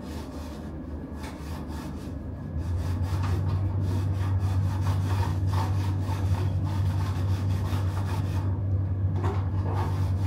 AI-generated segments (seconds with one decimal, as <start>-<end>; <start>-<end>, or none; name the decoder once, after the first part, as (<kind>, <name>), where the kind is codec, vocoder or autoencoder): 5.3-8.2 (codec, DAC); 8.6-9.5